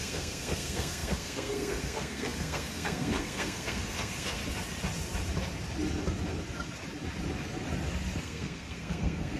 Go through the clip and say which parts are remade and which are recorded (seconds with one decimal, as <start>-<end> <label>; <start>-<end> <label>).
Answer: 0.0-4.4 remade; 4.4-8.2 recorded; 8.2-9.4 remade